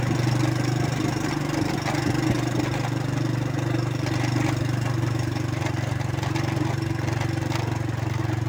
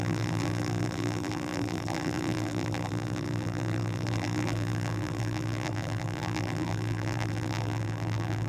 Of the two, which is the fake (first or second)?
second